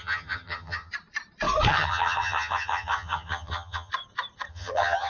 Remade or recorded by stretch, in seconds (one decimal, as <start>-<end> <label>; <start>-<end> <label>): 0.0-0.9 remade; 0.9-1.7 recorded; 1.7-3.9 remade; 3.9-4.5 recorded; 4.5-5.1 remade